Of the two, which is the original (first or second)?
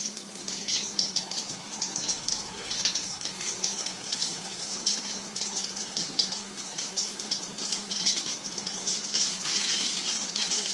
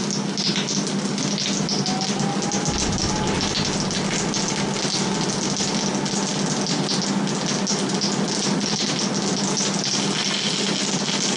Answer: second